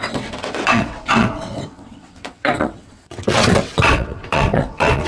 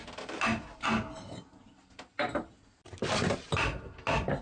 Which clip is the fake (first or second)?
first